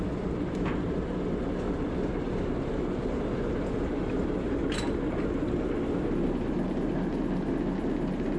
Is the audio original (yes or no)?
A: yes